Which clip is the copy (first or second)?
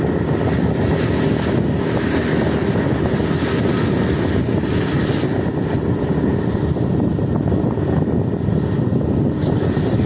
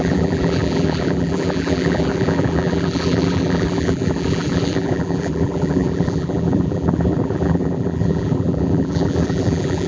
second